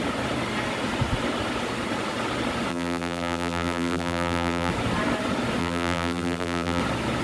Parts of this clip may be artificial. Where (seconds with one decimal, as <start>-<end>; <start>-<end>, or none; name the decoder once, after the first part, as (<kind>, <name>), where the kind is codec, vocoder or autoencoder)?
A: 2.7-4.7 (vocoder, BigVGAN v2); 5.6-6.8